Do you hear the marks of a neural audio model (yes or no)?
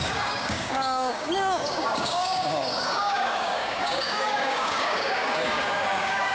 yes